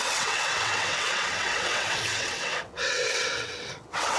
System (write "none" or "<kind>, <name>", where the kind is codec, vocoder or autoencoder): vocoder, WaveNeXt